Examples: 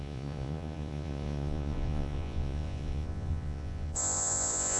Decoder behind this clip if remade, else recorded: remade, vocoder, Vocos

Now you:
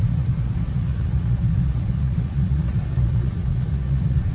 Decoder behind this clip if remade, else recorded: remade, vocoder, Vocos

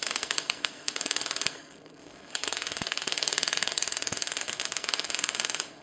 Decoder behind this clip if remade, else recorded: remade, codec, SNAC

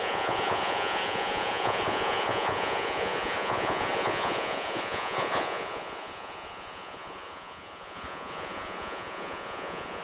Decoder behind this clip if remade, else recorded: remade, vocoder, Vocos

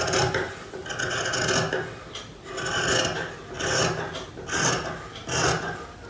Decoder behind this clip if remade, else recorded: recorded